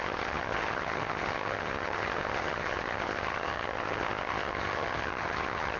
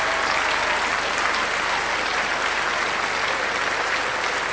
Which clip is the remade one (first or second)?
first